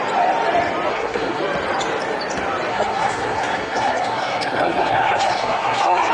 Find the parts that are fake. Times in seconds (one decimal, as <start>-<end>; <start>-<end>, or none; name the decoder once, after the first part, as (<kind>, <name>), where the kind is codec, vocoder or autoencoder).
0.9-1.4 (codec, SNAC); 2.7-6.1